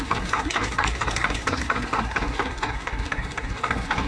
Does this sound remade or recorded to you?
remade